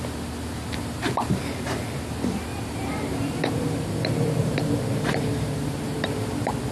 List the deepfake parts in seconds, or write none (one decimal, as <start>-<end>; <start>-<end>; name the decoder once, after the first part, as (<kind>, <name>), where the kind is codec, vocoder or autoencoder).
2.5-6.7 (vocoder, BigVGAN v2)